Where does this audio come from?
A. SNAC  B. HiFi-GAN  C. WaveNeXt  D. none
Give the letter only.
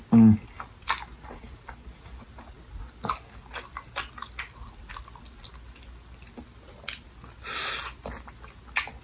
D